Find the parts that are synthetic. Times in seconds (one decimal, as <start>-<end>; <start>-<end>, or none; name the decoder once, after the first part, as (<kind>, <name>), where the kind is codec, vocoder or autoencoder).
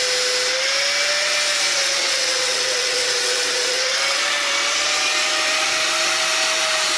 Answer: 1.7-4.2 (vocoder, WaveNeXt)